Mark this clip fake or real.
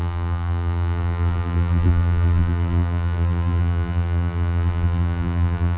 fake